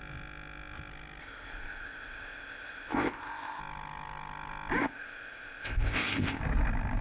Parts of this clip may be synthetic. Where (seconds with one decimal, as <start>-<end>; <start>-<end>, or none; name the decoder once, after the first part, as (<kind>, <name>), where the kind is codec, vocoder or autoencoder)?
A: 1.2-3.6 (codec, ZipCodec); 4.8-6.4